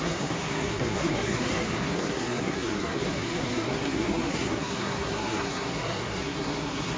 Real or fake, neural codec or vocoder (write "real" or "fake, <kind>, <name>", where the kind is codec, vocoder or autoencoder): fake, codec, SNAC